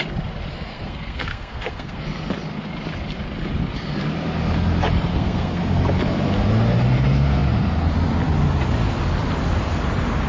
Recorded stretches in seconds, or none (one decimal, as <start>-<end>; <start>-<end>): 0.0-0.5; 2.0-5.1; 5.6-10.3